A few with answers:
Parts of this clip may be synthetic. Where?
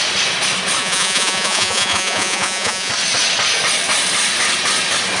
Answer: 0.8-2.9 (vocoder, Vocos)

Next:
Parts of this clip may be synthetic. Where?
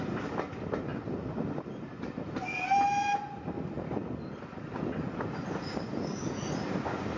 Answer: none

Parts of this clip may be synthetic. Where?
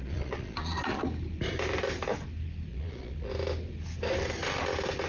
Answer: 0.0-1.0 (vocoder, Vocos); 2.7-3.3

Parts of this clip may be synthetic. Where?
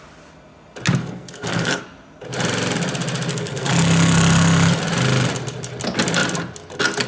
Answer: 1.0-1.8 (codec, SNAC); 3.3-4.8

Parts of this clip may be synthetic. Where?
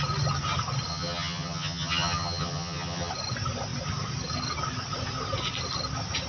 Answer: 0.9-3.1 (vocoder, HiFi-GAN)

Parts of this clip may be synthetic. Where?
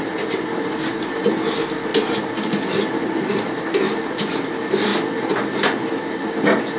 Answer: none